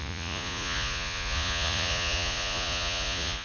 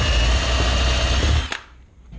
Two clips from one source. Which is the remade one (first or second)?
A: first